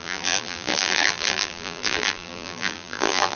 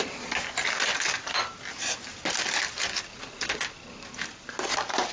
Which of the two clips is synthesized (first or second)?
first